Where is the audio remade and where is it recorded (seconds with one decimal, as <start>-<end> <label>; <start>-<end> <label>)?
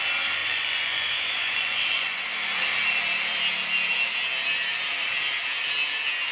0.0-0.4 recorded; 0.4-2.2 remade; 2.2-6.3 recorded